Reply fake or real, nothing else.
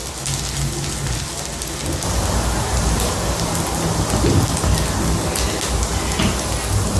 real